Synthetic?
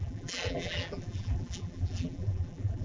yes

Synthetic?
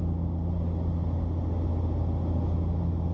no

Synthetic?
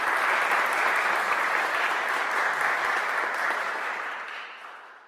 no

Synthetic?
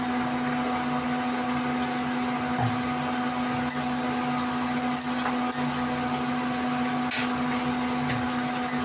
no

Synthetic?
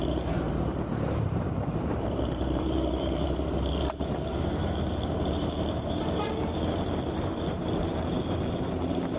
yes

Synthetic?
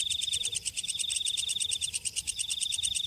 no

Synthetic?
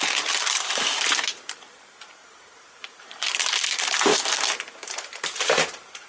yes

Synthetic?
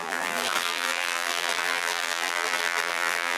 yes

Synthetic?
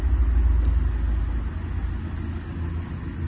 no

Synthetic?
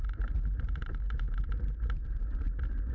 yes